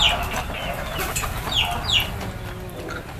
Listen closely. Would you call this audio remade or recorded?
recorded